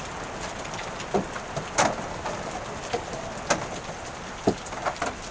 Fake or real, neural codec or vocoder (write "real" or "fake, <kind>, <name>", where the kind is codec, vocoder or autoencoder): real